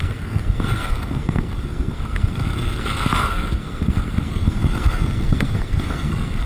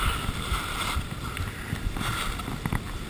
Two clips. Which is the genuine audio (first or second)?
second